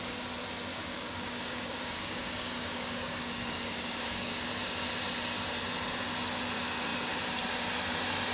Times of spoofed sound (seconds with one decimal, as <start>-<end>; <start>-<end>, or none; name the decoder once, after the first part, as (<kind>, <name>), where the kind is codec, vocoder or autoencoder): 0.7-4.3 (codec, DAC)